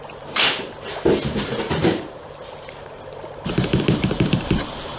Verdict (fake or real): fake